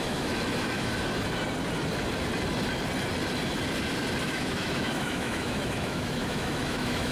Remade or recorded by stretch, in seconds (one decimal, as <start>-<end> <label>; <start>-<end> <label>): 0.0-0.9 remade; 0.9-4.2 recorded; 4.2-7.1 remade